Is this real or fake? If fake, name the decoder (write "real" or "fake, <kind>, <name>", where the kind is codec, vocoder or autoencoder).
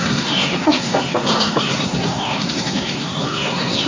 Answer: fake, codec, SNAC